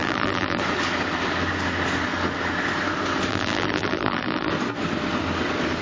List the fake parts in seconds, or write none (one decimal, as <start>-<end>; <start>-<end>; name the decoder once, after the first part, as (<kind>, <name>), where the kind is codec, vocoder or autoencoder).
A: 0.0-0.6 (vocoder, BigVGAN v2); 3.3-4.5